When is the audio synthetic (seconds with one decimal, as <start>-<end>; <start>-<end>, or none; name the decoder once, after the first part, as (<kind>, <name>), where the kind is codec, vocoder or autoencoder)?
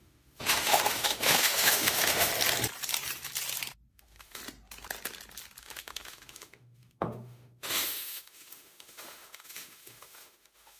0.0-2.3 (autoencoder, DAC-VAE); 3.9-4.4; 5.6-10.8